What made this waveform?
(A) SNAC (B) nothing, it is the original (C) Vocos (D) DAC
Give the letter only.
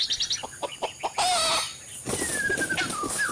B